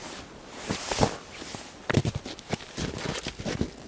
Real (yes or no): yes